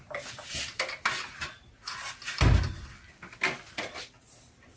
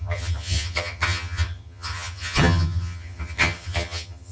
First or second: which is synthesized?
second